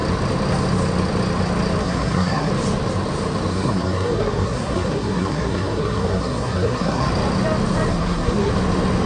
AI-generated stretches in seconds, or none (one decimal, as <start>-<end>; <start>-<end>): 1.8-2.5; 3.5-7.1; 7.9-8.5